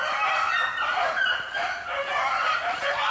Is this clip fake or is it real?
real